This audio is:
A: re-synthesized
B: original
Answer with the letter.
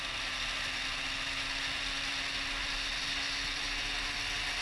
B